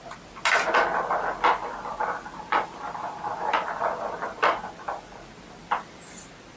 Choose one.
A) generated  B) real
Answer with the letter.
B